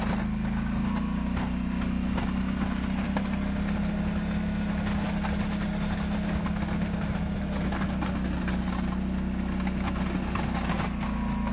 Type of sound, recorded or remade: recorded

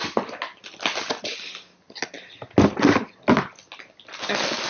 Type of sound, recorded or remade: recorded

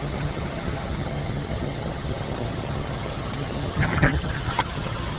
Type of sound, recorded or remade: remade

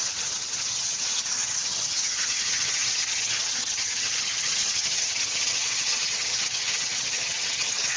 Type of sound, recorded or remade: remade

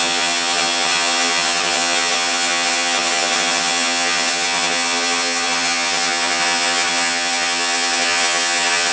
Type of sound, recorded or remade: remade